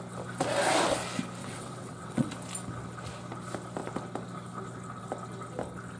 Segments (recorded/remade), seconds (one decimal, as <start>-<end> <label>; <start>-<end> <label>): 0.0-1.4 recorded; 1.4-2.3 remade; 2.3-6.0 recorded